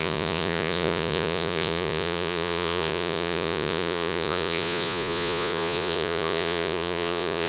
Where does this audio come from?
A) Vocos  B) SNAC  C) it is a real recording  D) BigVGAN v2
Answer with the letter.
A